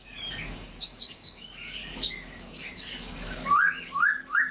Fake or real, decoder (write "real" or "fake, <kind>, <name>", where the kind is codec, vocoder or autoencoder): fake, codec, DAC